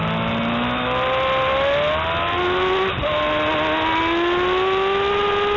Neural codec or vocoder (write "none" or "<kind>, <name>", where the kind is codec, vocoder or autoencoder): none